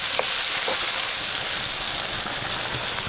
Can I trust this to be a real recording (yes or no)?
yes